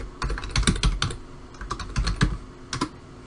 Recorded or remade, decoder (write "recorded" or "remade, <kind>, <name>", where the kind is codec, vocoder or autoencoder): recorded